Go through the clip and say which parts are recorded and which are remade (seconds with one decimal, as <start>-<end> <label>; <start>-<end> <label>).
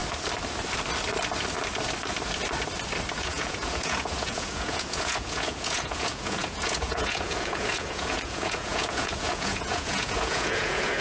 0.0-3.2 recorded; 3.2-11.0 remade